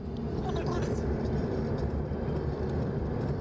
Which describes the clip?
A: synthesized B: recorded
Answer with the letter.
B